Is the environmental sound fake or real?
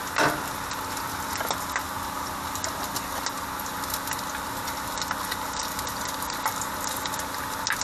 real